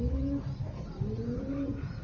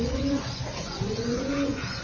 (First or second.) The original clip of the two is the first